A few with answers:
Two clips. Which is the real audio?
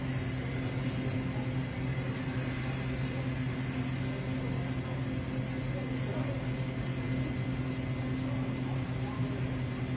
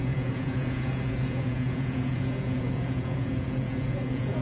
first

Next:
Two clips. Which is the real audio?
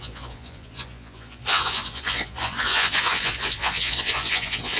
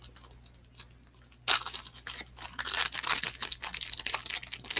second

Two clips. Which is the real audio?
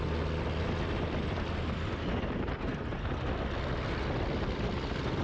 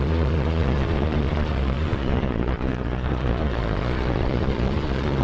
first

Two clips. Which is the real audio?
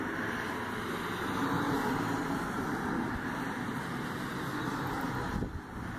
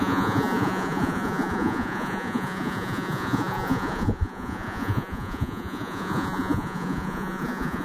first